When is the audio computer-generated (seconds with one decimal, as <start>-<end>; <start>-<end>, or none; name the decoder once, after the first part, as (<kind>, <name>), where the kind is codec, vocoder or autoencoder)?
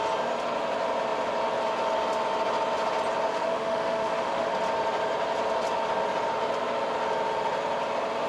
3.3-4.5 (autoencoder, DAC-VAE)